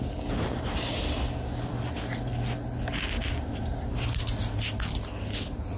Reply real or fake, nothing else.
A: real